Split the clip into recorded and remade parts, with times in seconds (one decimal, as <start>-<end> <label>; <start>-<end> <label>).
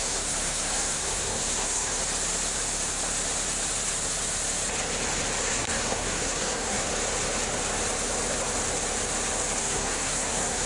0.0-2.0 remade; 2.0-5.4 recorded; 5.4-6.9 remade; 6.9-9.6 recorded; 9.6-10.7 remade